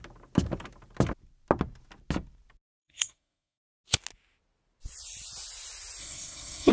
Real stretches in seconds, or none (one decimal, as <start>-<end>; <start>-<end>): 0.0-2.8; 3.6-6.0